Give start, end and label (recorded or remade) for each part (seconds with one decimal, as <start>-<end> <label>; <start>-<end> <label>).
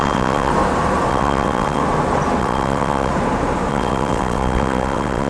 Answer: 0.0-0.5 remade; 0.5-1.1 recorded; 1.1-1.8 remade; 1.8-2.4 recorded; 2.4-3.1 remade; 3.1-3.7 recorded; 3.7-5.3 remade